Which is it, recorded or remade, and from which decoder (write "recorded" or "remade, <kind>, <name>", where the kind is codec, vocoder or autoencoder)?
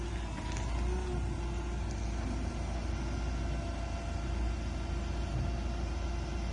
recorded